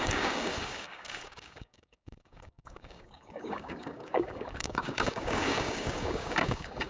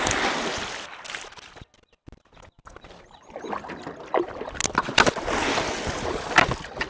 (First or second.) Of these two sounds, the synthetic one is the first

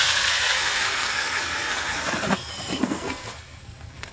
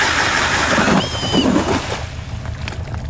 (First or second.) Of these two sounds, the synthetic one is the first